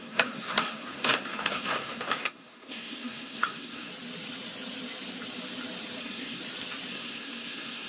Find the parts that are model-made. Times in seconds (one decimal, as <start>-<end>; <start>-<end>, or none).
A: 0.0-3.9; 6.0-6.4; 6.9-7.9